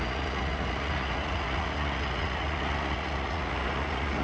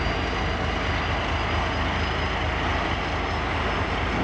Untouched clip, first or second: second